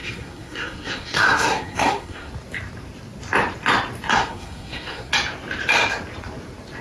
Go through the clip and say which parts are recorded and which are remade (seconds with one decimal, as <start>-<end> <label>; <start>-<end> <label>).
0.0-2.3 remade; 2.3-4.1 recorded; 4.1-5.1 remade; 5.1-6.8 recorded